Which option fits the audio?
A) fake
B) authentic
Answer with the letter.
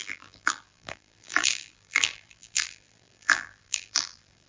A